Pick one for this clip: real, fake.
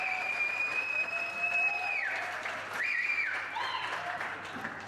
real